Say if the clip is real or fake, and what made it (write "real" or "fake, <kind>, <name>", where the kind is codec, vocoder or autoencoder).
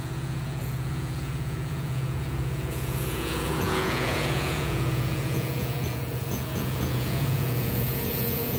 fake, vocoder, Vocos